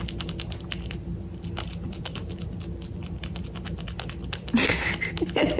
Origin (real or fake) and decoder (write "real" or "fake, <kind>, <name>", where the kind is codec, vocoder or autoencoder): real